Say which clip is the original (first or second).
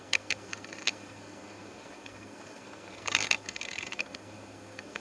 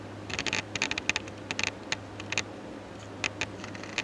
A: second